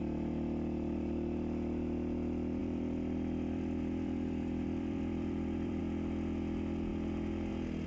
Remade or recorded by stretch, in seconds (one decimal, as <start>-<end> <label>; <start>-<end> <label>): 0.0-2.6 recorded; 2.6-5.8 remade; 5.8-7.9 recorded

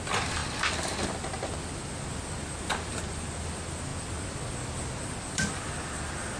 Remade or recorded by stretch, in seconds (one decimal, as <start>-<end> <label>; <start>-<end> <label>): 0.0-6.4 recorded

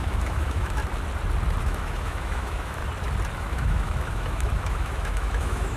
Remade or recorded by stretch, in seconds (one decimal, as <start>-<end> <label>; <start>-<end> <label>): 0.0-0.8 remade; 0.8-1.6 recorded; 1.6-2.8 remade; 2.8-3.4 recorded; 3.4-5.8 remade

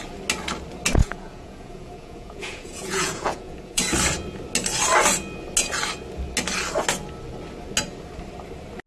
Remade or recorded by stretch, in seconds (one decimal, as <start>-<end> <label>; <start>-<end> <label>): 0.0-1.0 recorded; 1.0-3.8 remade; 3.8-8.9 recorded

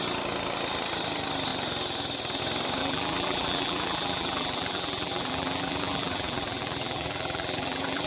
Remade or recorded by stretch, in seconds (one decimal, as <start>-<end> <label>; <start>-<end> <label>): 0.0-2.8 recorded; 2.8-8.1 remade

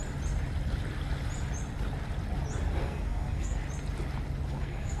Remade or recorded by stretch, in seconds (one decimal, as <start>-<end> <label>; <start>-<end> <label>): 0.0-2.8 recorded; 2.8-3.6 remade; 3.6-4.5 recorded; 4.5-5.0 remade